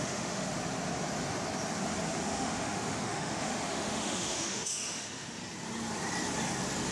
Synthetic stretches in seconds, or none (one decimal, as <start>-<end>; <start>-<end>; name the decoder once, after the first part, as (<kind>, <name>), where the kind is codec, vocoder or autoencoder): 0.0-0.5 (autoencoder, DAC-VAE); 2.2-5.4